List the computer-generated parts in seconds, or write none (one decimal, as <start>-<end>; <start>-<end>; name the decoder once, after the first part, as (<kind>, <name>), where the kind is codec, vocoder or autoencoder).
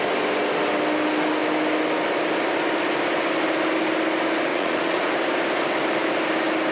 4.5-5.1 (vocoder, Vocos)